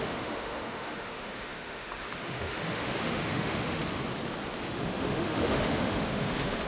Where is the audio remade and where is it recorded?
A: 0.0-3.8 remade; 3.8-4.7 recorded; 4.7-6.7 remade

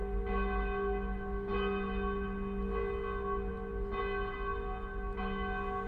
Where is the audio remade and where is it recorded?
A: 0.0-5.9 recorded

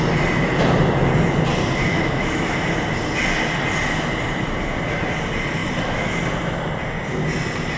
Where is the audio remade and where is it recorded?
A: 0.0-1.9 recorded; 1.9-2.6 remade; 2.6-5.6 recorded; 5.6-6.2 remade; 6.2-7.8 recorded

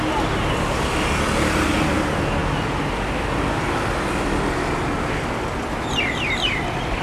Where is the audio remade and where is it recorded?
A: 0.0-7.0 recorded